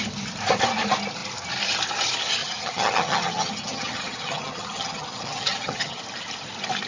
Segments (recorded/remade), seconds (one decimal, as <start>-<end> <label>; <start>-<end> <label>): 0.0-2.4 recorded; 2.4-6.0 remade; 6.0-6.9 recorded